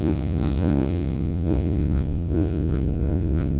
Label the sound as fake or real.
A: fake